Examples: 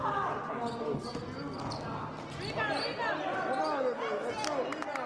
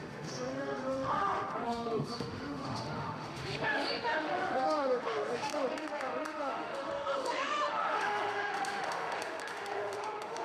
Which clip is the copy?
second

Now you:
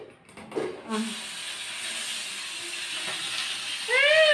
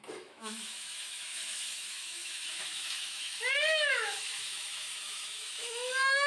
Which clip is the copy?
second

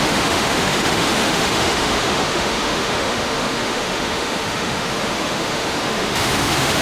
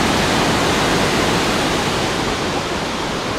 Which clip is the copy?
first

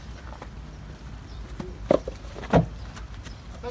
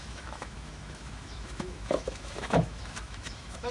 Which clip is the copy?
second